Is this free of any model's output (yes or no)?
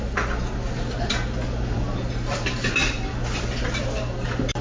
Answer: yes